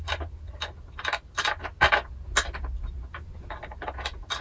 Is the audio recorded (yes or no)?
yes